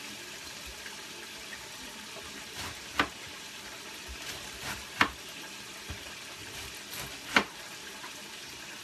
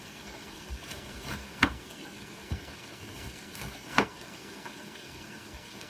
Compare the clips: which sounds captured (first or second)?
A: first